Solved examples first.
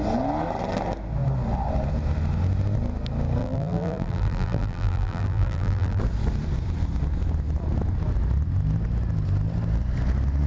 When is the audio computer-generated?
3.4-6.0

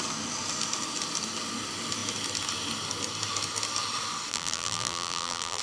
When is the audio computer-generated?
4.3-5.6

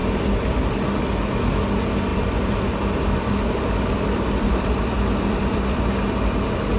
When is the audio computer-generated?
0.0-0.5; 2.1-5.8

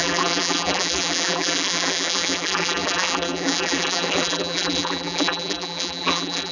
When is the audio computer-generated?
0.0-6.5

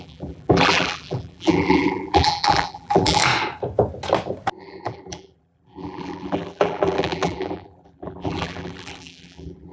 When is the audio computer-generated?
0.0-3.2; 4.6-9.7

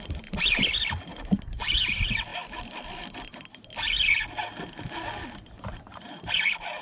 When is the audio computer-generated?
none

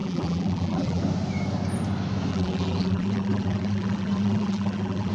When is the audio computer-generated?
0.0-1.0; 2.3-5.1